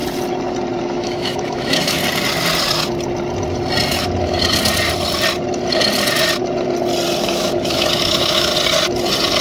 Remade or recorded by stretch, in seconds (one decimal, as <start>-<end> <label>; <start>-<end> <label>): 0.0-0.8 recorded; 0.8-2.0 remade; 2.0-7.2 recorded; 7.2-8.5 remade; 8.5-9.4 recorded

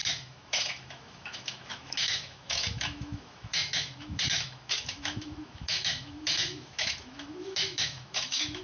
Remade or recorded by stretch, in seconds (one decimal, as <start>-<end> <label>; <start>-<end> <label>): 0.0-8.6 remade